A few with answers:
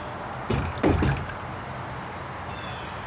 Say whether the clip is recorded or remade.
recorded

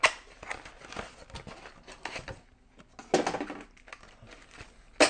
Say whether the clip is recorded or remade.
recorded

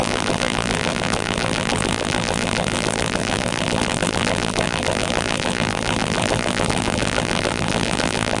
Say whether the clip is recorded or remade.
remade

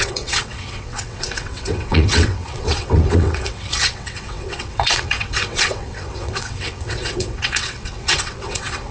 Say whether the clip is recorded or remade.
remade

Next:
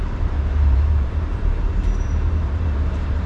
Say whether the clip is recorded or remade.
remade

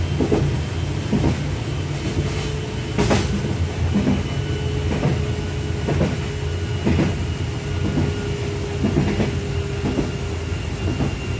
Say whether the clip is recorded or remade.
recorded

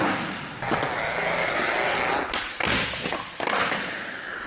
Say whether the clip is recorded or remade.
recorded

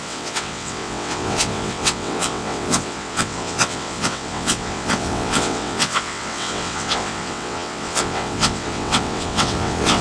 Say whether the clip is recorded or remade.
remade